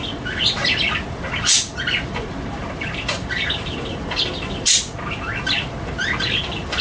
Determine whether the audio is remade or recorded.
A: recorded